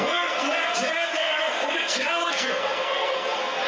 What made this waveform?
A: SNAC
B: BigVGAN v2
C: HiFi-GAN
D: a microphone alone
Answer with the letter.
A